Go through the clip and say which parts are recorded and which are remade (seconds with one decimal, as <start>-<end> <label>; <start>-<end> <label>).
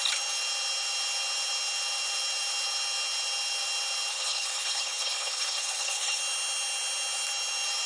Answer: 0.0-4.1 recorded; 4.1-6.2 remade; 6.2-7.9 recorded